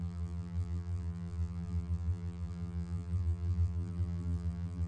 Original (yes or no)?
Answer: no